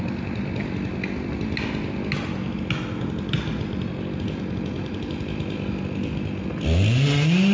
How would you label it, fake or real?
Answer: real